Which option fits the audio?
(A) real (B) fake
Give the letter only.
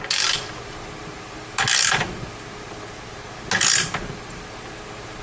A